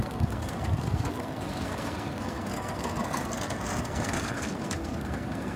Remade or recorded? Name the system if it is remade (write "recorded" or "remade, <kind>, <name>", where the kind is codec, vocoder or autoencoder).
remade, codec, SNAC